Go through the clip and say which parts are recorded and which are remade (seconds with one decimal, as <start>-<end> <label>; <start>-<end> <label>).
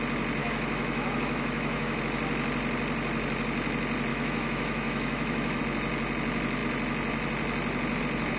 0.0-0.4 recorded; 0.4-2.0 remade; 2.0-4.1 recorded; 4.1-5.6 remade; 5.6-8.4 recorded